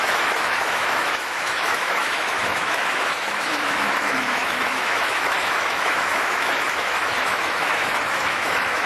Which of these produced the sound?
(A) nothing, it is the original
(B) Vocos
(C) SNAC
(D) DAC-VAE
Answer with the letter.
D